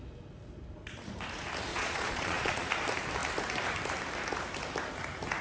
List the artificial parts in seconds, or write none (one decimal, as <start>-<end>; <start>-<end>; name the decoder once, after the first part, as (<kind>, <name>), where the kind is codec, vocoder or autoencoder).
1.7-2.7 (vocoder, Vocos)